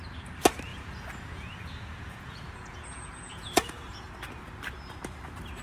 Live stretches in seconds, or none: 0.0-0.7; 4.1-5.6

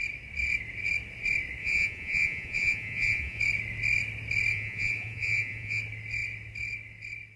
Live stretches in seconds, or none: 0.0-1.6; 3.4-4.5; 5.8-7.4

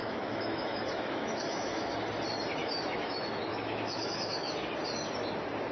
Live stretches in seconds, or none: 1.9-2.6; 4.7-5.7

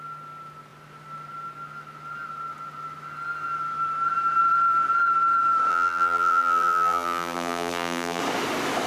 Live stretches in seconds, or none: 0.0-5.7; 8.2-8.9

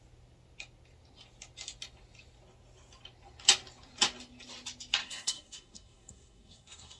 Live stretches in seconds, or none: 0.0-5.0

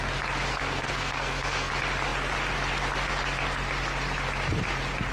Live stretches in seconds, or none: 0.0-0.5; 1.7-5.1